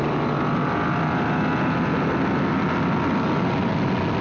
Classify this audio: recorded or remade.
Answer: recorded